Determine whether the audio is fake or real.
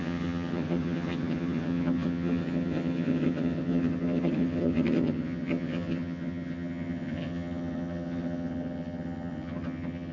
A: fake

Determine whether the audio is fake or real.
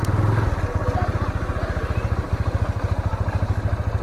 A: real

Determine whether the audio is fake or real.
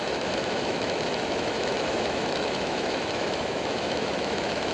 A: fake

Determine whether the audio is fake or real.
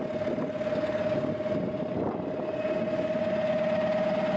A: real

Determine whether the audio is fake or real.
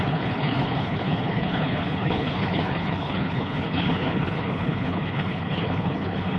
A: fake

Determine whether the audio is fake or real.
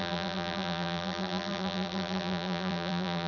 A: fake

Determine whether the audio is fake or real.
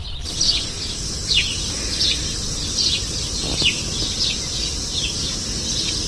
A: real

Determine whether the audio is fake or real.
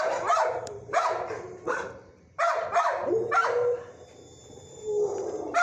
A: fake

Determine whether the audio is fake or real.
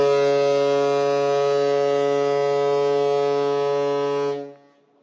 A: real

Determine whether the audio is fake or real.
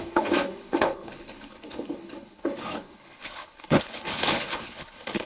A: fake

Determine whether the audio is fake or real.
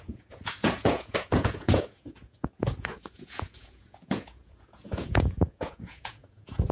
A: fake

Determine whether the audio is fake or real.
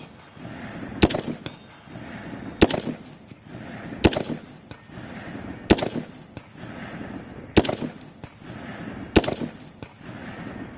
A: real